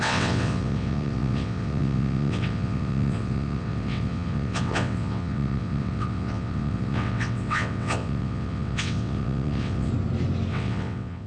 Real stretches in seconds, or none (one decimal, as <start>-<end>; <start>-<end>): 9.9-10.5

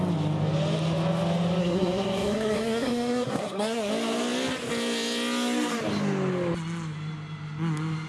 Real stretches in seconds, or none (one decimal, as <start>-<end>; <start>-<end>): 0.0-1.6; 3.9-8.1

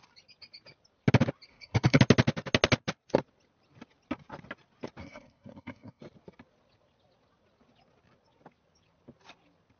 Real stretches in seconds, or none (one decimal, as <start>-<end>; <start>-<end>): 0.0-1.5; 2.0-5.0; 6.0-9.8